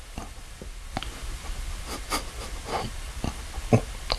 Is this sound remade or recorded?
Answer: recorded